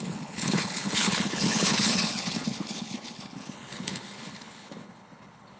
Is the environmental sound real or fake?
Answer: fake